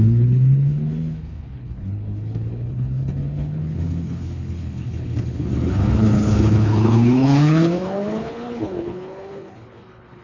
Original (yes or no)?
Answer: no